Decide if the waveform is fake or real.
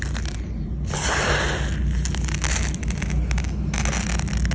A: real